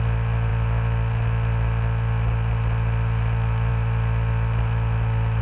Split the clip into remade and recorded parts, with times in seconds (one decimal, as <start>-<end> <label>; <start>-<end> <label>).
0.0-5.4 recorded